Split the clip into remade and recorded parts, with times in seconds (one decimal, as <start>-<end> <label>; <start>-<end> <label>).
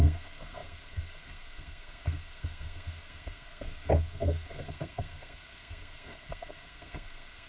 0.0-7.5 remade